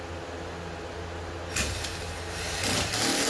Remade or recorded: recorded